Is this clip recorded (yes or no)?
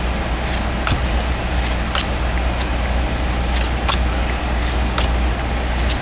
yes